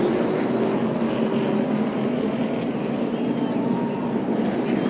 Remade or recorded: recorded